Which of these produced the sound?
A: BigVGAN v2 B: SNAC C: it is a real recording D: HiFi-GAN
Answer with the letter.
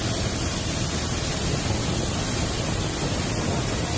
C